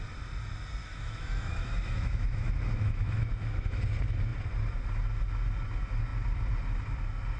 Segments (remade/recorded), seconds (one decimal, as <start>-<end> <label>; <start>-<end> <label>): 0.0-0.8 recorded; 0.8-3.8 remade; 3.8-7.4 recorded